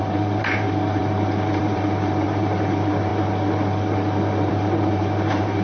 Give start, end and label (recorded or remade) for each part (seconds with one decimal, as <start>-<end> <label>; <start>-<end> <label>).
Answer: 0.0-1.0 remade; 1.0-1.6 recorded; 1.6-3.1 remade; 3.1-4.5 recorded; 4.5-5.6 remade